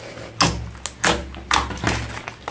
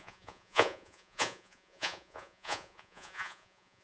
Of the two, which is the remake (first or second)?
second